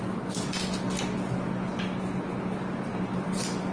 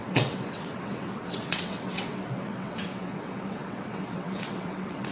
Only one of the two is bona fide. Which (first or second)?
first